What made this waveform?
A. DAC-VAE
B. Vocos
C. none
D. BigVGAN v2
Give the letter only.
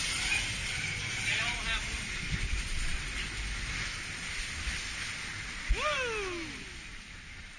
C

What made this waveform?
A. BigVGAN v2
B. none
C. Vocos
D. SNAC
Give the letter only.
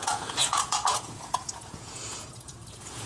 C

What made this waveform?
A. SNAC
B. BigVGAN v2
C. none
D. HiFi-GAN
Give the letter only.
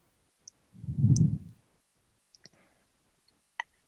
C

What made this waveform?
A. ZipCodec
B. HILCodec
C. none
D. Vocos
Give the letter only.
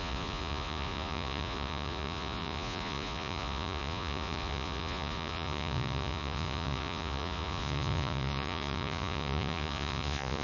D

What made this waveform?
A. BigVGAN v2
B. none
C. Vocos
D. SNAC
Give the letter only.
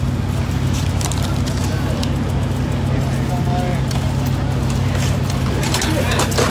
B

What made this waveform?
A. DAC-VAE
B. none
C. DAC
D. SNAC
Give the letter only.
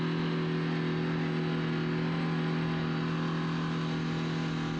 B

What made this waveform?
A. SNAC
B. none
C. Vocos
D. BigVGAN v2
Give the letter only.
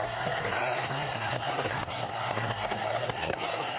A